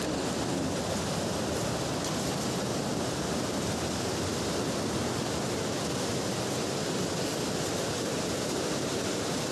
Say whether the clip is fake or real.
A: real